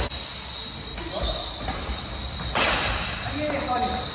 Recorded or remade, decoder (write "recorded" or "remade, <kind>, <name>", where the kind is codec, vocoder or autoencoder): recorded